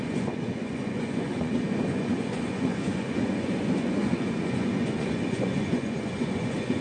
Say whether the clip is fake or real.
fake